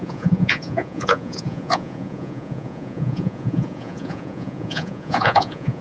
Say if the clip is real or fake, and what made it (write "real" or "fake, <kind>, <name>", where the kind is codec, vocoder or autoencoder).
fake, vocoder, Vocos